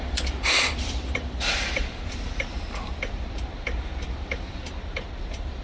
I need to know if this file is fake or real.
fake